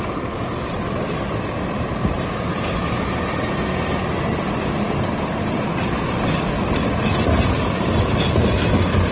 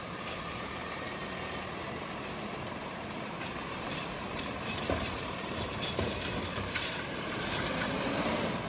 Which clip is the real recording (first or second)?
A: first